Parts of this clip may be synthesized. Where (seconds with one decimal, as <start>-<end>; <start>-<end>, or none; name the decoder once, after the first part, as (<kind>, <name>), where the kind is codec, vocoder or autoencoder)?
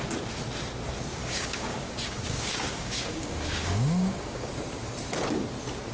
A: 1.2-4.5 (codec, DAC)